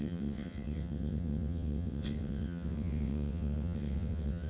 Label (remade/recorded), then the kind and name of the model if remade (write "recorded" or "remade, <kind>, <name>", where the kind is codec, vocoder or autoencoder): remade, vocoder, WaveNeXt